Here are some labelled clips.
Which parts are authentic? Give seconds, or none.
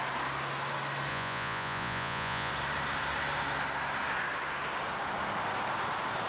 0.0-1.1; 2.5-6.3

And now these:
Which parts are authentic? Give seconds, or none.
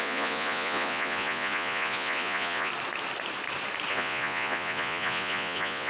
2.7-3.9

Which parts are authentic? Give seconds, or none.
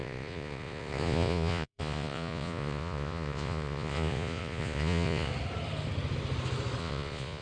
5.3-6.8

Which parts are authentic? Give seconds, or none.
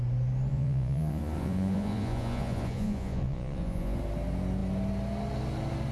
0.0-0.5; 4.0-5.9